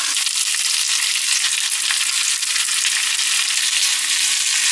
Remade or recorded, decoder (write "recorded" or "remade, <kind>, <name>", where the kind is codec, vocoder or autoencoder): recorded